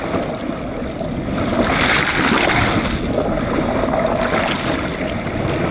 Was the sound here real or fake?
real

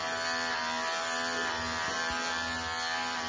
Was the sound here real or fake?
real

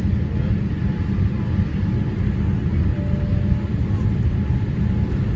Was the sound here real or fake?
real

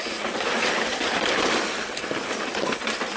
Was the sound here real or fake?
fake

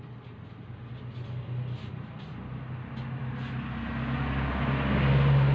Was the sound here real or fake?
real